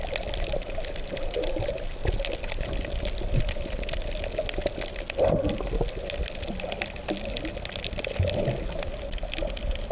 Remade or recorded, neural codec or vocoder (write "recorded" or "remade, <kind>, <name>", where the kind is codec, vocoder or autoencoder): recorded